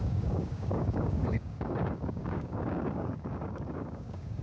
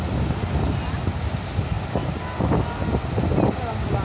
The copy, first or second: first